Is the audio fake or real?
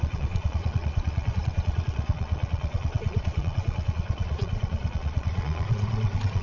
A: fake